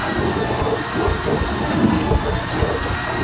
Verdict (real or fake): real